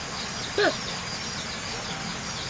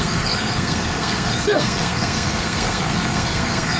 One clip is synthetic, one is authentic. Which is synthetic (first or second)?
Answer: second